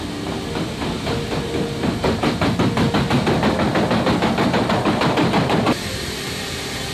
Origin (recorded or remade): recorded